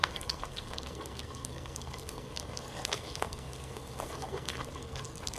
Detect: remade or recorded remade